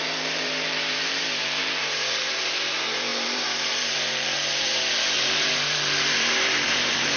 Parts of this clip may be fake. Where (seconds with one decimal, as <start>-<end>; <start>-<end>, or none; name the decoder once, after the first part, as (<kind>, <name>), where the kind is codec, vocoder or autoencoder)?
0.0-7.2 (vocoder, BigVGAN v2)